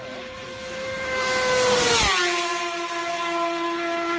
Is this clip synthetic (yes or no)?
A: no